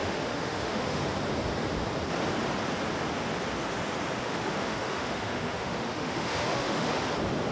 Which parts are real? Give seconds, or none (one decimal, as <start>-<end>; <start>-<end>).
1.0-4.2; 6.9-7.5